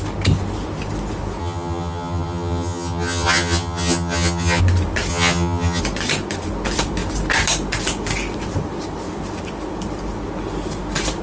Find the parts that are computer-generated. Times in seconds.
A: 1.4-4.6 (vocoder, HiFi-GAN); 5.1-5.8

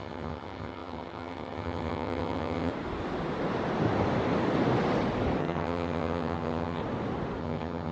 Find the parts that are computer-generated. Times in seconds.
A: 0.0-2.7 (vocoder, HiFi-GAN); 5.4-6.8; 7.4-7.9

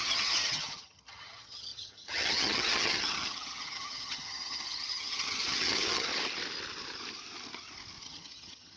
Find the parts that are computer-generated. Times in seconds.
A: 0.0-6.1 (vocoder, HiFi-GAN); 8.0-8.8

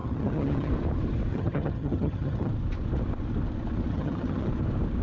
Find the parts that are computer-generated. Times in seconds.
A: 0.0-0.7 (vocoder, HiFi-GAN); 1.3-2.5; 3.9-4.5

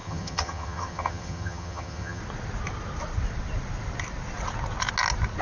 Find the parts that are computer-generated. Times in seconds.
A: 0.0-2.2 (vocoder, HiFi-GAN)

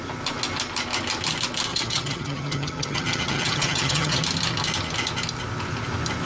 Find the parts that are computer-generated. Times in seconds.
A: 1.7-4.2 (vocoder, HiFi-GAN)

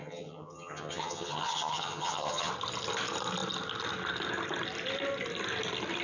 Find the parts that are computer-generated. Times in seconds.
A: 0.0-2.5 (vocoder, HiFi-GAN)

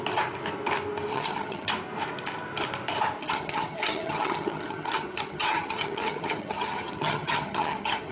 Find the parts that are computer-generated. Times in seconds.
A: 1.1-1.7 (vocoder, HiFi-GAN); 3.2-8.1